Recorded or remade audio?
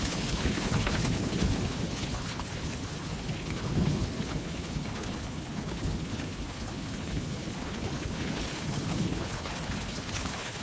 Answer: remade